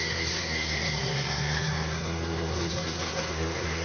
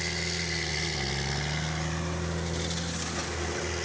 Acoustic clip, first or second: second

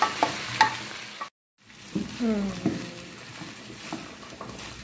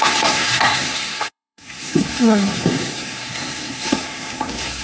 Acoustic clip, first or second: first